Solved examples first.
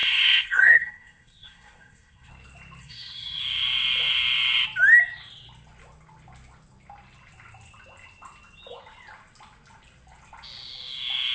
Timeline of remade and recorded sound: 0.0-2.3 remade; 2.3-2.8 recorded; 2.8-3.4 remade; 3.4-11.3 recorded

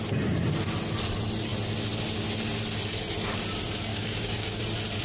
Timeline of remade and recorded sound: 0.0-3.9 recorded; 3.9-4.6 remade; 4.6-5.0 recorded

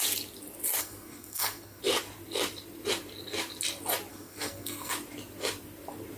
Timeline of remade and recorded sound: 0.0-0.8 recorded; 0.8-1.8 remade; 1.8-4.1 recorded; 4.1-4.9 remade; 4.9-6.2 recorded